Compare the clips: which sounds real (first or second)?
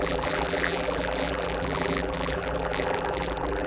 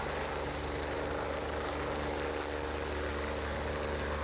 second